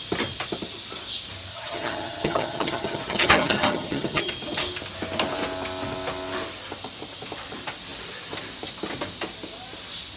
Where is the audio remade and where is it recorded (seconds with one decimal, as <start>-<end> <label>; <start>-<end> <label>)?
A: 0.0-1.5 recorded; 1.5-4.3 remade; 4.3-10.2 recorded